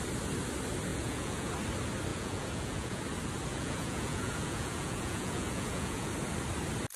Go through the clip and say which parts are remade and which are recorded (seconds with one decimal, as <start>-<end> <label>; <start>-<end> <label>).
0.0-0.9 recorded; 0.9-1.5 remade; 1.5-2.1 recorded; 2.1-3.0 remade; 3.0-3.5 recorded; 3.5-6.1 remade; 6.1-7.0 recorded